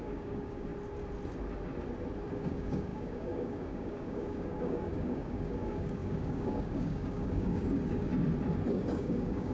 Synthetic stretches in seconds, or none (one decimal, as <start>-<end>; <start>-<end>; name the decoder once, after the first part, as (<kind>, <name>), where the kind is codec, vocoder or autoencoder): 0.0-0.7 (codec, DAC); 2.3-8.1; 8.7-9.5